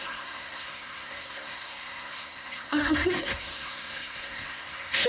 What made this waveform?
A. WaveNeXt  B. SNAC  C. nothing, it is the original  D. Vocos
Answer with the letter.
B